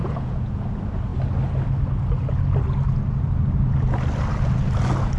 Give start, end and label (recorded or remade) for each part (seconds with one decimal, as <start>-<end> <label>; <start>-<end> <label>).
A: 0.0-0.6 remade; 0.6-5.2 recorded